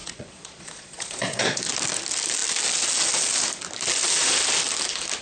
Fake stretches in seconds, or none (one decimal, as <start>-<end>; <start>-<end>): 0.0-1.6